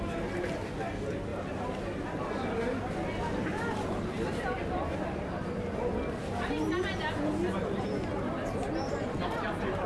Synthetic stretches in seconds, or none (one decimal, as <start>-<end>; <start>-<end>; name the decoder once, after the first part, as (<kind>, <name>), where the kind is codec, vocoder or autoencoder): none